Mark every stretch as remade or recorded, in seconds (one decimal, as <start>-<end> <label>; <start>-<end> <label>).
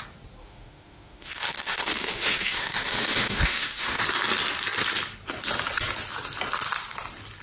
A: 0.0-0.4 recorded; 0.4-4.0 remade; 4.0-7.4 recorded